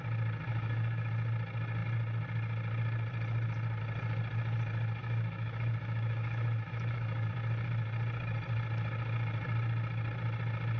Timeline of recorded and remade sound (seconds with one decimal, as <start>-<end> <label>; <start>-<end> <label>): 0.0-0.5 recorded; 0.5-1.1 remade; 1.1-5.0 recorded; 5.0-7.3 remade; 7.3-10.8 recorded